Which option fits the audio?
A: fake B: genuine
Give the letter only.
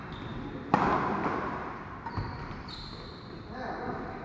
B